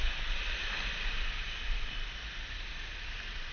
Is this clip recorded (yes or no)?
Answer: yes